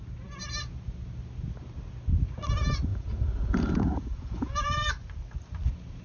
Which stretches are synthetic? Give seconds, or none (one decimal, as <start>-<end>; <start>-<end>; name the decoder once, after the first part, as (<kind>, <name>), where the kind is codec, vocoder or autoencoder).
2.9-4.9 (vocoder, Vocos)